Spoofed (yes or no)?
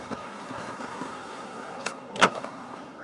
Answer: yes